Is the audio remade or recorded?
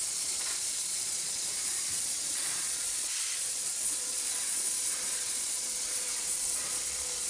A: remade